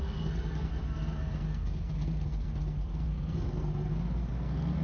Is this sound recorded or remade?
remade